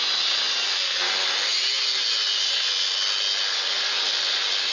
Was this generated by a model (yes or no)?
no